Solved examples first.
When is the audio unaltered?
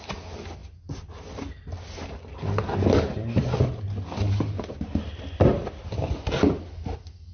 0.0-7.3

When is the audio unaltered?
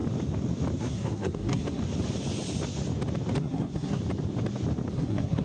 0.0-0.8; 1.8-3.4; 4.0-4.9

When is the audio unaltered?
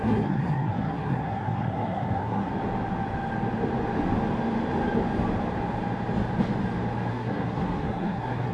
2.5-7.1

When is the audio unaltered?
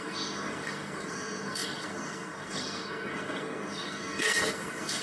none